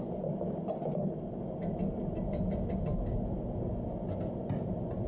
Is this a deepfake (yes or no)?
no